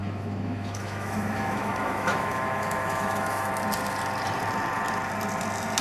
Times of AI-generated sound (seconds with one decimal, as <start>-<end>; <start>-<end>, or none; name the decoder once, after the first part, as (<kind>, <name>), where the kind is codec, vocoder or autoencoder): 0.0-3.5 (autoencoder, DAC-VAE)